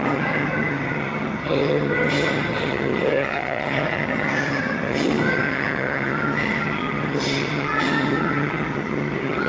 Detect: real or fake fake